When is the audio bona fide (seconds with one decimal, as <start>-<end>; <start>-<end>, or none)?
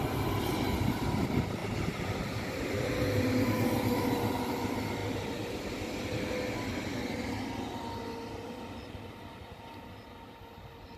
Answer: 0.0-11.0